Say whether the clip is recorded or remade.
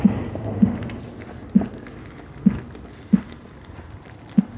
recorded